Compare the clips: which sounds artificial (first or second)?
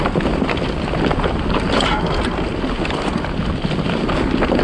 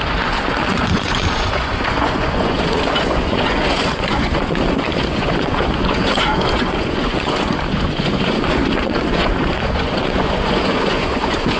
second